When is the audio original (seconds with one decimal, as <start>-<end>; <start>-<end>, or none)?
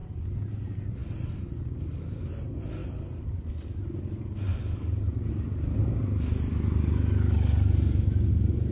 0.0-8.7